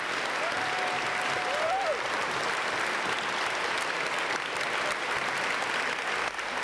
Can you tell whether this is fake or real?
real